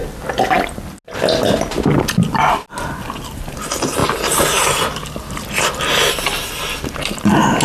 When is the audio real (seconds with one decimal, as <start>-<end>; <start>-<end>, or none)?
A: 0.0-7.6